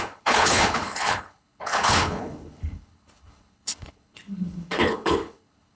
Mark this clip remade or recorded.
remade